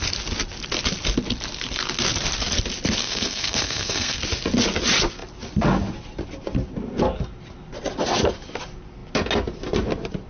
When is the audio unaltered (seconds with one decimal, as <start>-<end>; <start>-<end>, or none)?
0.0-3.0; 4.2-10.3